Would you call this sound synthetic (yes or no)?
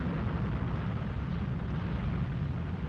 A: no